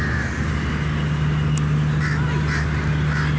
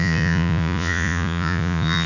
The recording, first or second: first